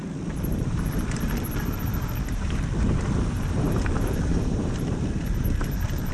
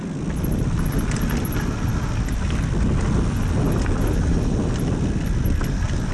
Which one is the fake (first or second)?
first